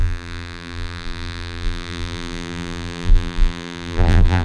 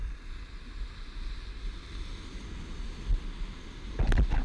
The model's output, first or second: first